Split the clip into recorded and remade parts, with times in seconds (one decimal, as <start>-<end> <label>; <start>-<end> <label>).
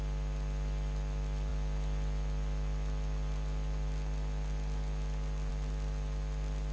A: 0.0-6.7 recorded